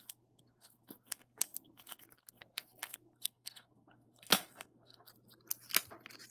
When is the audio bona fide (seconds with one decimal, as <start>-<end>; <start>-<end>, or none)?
5.1-6.3